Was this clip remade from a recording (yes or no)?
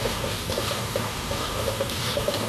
yes